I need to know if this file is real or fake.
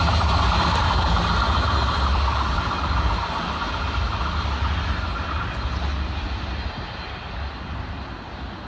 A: real